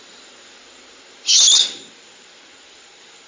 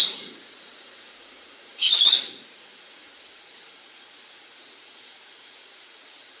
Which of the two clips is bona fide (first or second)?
first